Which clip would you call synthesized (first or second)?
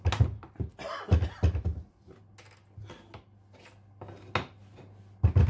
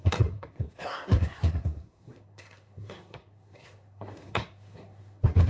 second